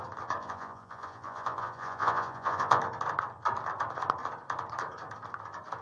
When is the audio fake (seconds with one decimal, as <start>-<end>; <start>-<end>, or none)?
0.4-2.8